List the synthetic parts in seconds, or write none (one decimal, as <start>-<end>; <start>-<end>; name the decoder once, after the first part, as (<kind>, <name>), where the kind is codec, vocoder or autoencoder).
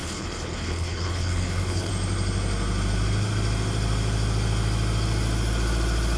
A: 0.0-1.9 (codec, HILCodec)